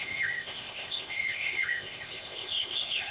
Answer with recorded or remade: remade